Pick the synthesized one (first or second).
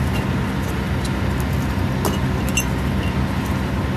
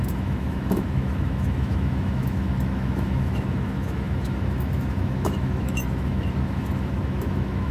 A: second